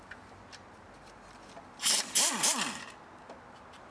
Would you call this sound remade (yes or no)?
no